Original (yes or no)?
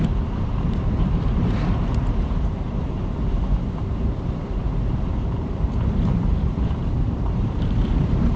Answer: no